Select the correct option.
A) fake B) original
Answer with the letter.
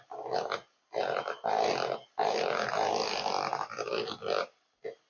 B